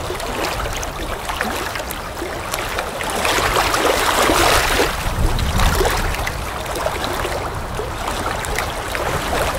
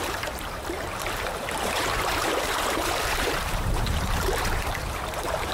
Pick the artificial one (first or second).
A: second